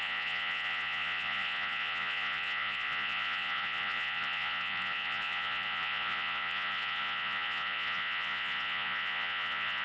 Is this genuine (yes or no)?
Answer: no